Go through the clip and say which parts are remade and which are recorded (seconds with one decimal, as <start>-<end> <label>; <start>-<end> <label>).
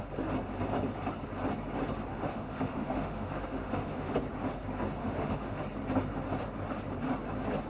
0.0-2.1 recorded; 2.1-4.1 remade; 4.1-5.0 recorded; 5.0-5.6 remade; 5.6-7.7 recorded